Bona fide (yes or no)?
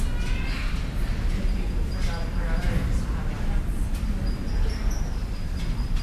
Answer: yes